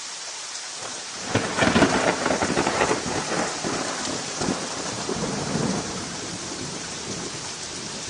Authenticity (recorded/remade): remade